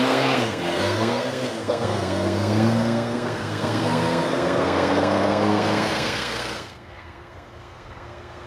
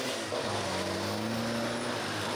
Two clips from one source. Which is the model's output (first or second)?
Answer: first